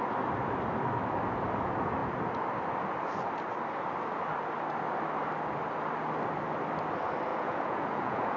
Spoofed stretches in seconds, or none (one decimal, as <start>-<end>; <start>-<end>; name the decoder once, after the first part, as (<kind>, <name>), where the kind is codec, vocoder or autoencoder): 7.3-8.4 (vocoder, Vocos)